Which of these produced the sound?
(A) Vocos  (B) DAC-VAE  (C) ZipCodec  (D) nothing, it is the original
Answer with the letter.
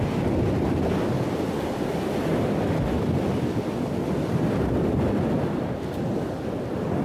D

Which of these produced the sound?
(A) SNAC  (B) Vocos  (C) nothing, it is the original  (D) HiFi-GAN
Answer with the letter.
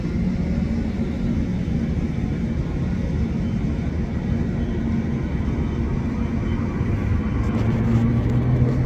C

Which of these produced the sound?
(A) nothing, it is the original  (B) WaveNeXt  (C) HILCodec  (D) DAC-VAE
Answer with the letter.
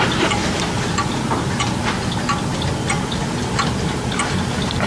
A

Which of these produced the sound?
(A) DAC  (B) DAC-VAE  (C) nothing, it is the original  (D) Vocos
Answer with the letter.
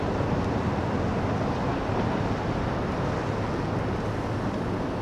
C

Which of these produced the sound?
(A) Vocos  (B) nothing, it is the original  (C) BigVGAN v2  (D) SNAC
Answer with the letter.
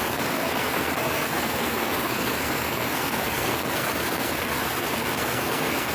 D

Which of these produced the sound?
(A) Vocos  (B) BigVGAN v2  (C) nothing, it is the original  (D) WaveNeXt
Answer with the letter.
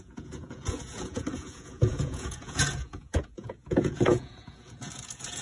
A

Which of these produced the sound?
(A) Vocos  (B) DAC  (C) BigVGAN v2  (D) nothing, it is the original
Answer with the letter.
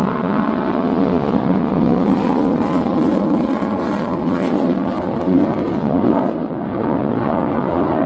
A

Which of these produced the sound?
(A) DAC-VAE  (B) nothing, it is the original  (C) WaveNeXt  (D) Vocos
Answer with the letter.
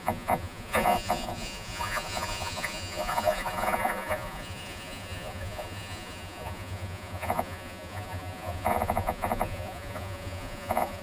D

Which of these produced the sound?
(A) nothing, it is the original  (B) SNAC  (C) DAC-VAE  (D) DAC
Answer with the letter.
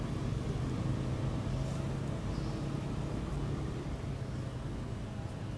A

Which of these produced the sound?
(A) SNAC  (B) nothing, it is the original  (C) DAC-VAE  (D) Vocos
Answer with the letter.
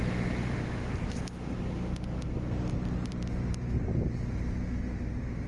B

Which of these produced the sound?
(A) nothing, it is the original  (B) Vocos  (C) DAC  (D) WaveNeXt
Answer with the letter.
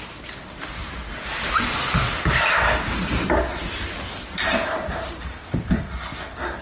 A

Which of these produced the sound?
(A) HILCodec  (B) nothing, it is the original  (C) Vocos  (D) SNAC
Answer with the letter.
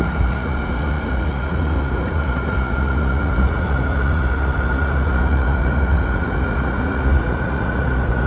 C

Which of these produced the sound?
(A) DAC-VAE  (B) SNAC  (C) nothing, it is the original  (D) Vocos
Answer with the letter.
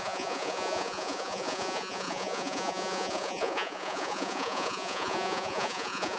D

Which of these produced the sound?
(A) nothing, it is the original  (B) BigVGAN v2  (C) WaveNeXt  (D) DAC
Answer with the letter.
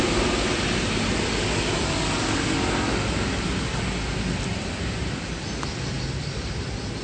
A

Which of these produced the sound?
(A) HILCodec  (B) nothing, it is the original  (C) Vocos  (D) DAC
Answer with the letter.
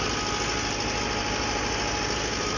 B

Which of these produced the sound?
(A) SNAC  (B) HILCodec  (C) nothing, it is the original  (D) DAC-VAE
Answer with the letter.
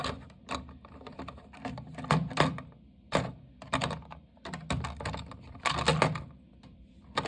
C